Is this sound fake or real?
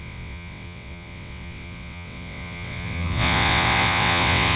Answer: fake